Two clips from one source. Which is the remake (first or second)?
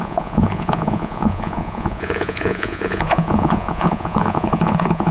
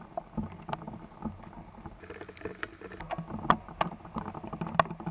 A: first